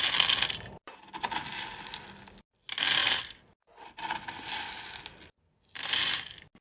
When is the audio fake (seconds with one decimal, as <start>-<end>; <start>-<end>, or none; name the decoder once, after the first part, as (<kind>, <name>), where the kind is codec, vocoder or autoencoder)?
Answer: none